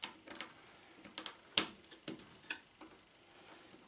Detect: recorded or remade recorded